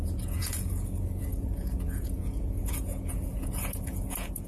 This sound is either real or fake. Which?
fake